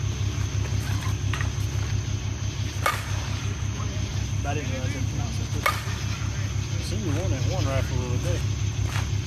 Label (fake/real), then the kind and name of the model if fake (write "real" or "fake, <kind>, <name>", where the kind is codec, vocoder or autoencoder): real